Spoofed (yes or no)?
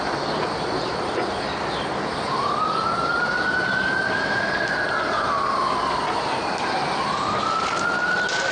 no